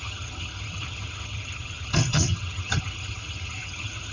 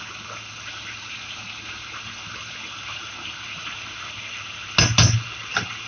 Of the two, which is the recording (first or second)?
second